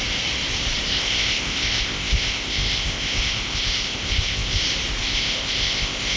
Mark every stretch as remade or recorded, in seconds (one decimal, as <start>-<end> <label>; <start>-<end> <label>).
0.0-0.9 recorded; 0.9-4.6 remade; 4.6-5.0 recorded; 5.0-6.2 remade

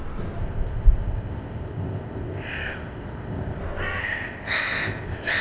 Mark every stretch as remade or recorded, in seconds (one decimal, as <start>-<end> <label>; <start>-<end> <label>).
0.0-0.4 recorded; 0.4-3.6 remade; 3.6-4.0 recorded; 4.0-5.4 remade